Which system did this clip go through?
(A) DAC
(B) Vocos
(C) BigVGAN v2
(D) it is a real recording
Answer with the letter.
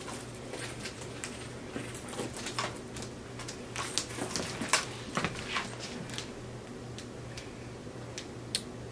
D